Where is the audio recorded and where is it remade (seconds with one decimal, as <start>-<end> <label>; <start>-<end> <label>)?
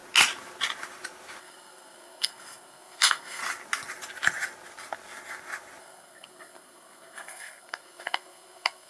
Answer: 0.0-1.4 recorded; 1.4-3.4 remade; 3.4-5.8 recorded; 5.8-8.9 remade